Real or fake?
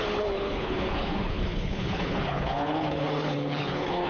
fake